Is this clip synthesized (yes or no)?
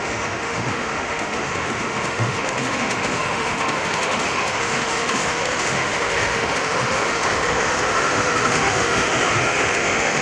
yes